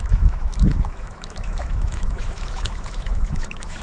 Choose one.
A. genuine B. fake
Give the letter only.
B